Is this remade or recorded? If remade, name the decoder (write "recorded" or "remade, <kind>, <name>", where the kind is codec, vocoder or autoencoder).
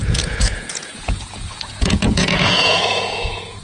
remade, vocoder, Vocos